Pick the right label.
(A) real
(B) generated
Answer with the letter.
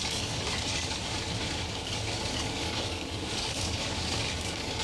B